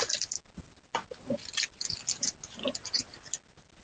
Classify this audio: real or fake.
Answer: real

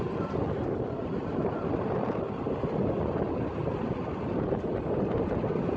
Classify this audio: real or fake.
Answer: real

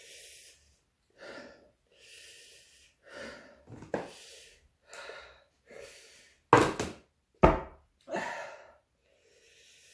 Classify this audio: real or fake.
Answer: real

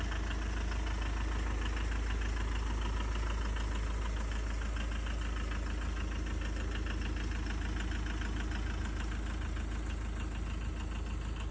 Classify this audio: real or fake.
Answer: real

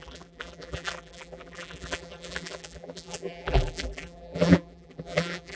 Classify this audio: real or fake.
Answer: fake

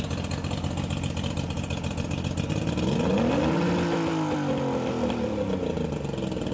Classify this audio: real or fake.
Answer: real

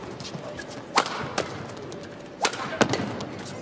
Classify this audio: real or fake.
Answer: real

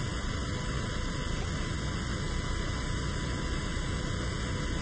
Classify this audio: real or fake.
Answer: real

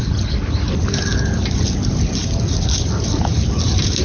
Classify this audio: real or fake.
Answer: real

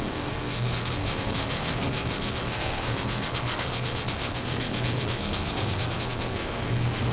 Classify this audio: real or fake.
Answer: fake